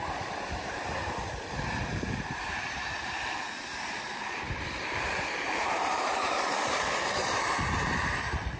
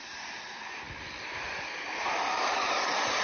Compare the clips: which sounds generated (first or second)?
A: first